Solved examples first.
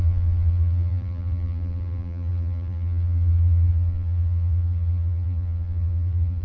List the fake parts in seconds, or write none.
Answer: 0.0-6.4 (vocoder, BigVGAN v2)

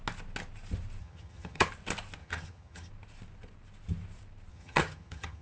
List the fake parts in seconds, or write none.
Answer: 1.0-1.7 (vocoder, HiFi-GAN); 2.2-2.9; 4.5-5.4

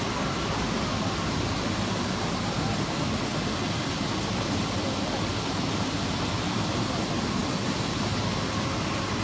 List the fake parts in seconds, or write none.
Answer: none

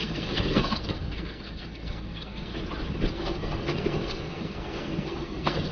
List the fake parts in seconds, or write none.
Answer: 0.0-2.5 (codec, SNAC); 3.1-5.7

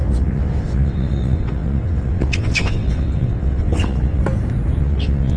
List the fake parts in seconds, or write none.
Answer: 0.0-4.2 (vocoder, WaveNeXt); 4.8-5.4

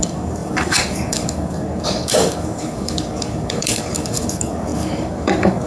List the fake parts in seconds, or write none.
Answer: 0.0-5.7 (codec, DAC)

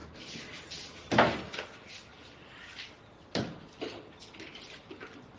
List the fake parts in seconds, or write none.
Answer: none

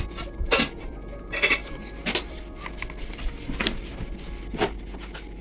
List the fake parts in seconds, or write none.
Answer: none